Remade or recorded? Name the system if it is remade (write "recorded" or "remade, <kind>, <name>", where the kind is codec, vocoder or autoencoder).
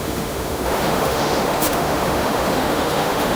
remade, autoencoder, DAC-VAE